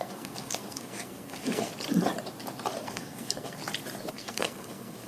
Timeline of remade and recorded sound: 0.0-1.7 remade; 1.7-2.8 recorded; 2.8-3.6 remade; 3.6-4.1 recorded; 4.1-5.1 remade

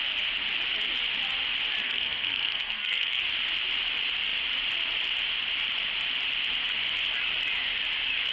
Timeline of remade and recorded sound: 0.0-1.8 recorded; 1.8-3.2 remade; 3.2-8.3 recorded

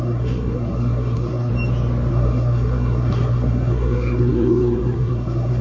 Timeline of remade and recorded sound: 0.0-1.5 remade; 1.5-2.1 recorded; 2.1-5.6 remade

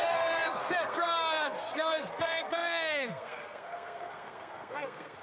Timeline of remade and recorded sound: 0.0-5.2 remade

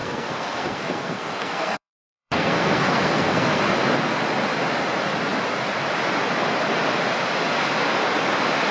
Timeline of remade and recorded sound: 0.0-3.6 remade; 3.6-8.7 recorded

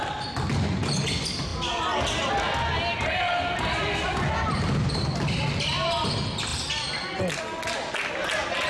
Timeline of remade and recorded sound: 0.0-8.7 recorded